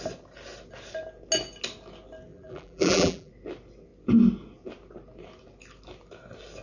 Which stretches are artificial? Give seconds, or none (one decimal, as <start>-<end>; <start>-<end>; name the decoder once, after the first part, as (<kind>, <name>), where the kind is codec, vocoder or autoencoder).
2.3-3.3 (vocoder, BigVGAN v2)